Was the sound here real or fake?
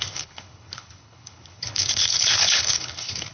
fake